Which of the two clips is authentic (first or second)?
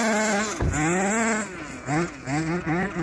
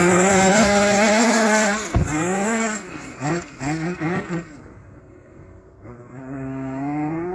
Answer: first